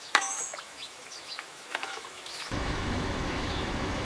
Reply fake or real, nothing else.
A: fake